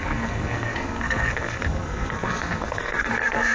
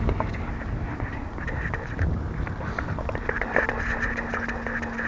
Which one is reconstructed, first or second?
first